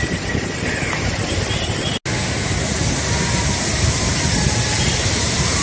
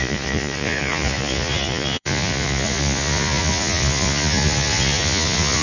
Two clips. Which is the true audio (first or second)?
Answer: first